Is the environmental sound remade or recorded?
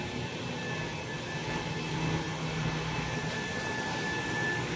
recorded